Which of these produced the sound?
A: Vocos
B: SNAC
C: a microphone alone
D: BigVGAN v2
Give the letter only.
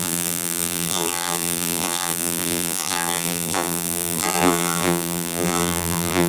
D